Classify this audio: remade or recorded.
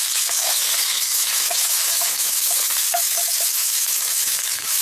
remade